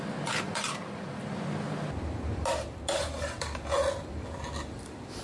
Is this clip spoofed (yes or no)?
no